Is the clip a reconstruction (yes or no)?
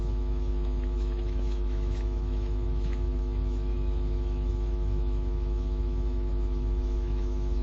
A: yes